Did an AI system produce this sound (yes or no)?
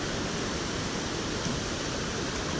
no